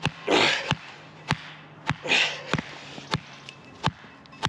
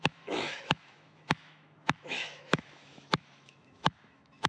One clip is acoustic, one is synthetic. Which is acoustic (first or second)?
first